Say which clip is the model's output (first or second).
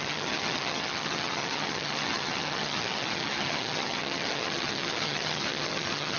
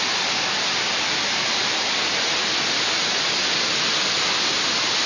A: first